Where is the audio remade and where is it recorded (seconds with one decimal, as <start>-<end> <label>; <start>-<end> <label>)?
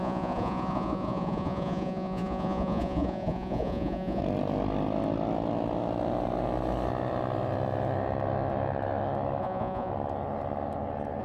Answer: 0.0-4.2 remade; 4.2-9.4 recorded; 9.4-9.9 remade; 9.9-11.2 recorded